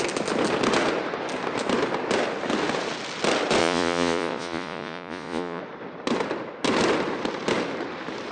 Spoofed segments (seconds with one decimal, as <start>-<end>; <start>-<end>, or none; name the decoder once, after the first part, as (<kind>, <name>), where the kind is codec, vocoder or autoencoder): 3.6-5.6 (vocoder, Vocos)